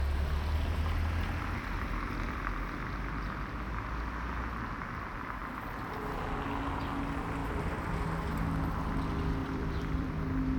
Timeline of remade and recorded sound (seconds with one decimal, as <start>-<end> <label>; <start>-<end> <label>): 0.0-7.4 recorded; 7.4-7.9 remade; 7.9-9.4 recorded; 9.4-10.1 remade; 10.1-10.6 recorded